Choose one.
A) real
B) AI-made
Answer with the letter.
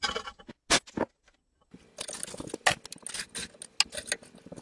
A